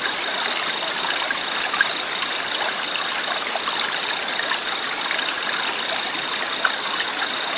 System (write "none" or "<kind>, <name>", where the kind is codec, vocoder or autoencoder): none